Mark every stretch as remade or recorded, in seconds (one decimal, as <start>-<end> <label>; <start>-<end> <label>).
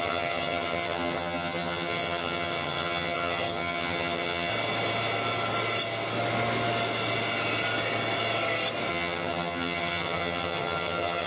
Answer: 0.0-4.5 remade; 4.5-8.9 recorded; 8.9-11.3 remade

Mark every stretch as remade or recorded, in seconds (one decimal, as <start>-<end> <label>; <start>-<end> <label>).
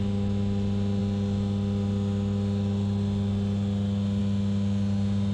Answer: 0.0-5.3 recorded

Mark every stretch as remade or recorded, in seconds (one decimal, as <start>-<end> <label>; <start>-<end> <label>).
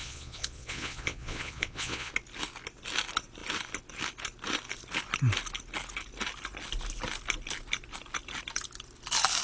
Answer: 0.0-2.1 remade; 2.1-9.4 recorded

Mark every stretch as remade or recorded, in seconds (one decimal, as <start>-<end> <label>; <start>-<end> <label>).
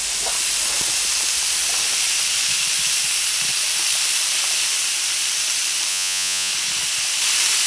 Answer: 0.0-5.9 recorded; 5.9-6.5 remade; 6.5-7.7 recorded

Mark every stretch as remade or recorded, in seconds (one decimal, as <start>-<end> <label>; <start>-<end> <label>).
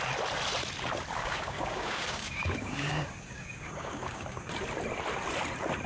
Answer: 0.0-1.2 recorded; 1.2-4.5 remade; 4.5-5.9 recorded